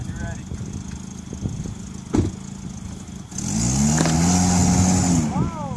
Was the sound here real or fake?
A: real